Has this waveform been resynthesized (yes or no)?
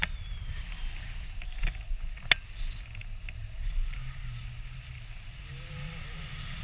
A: no